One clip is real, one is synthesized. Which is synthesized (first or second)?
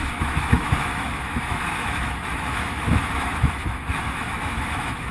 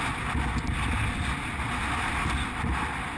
first